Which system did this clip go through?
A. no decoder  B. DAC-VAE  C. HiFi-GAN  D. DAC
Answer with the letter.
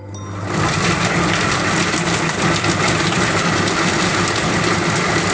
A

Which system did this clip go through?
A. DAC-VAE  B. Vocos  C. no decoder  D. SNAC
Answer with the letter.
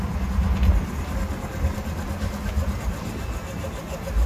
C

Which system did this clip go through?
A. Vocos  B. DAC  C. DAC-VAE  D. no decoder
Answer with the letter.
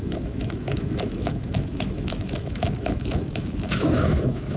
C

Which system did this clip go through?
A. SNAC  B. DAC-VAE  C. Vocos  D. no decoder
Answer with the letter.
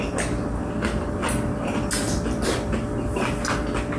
D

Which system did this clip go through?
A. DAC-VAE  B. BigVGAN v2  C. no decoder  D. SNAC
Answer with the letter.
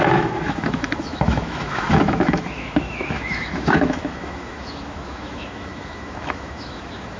A